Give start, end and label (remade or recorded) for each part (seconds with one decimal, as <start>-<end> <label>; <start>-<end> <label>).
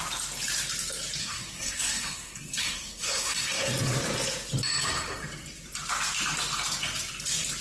0.0-1.2 recorded; 1.2-3.7 remade; 3.7-7.6 recorded